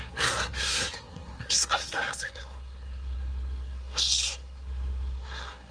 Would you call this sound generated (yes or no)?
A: yes